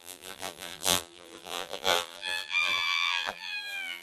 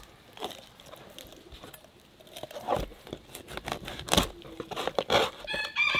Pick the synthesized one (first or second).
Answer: first